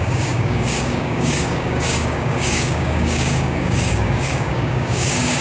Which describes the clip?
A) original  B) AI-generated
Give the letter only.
B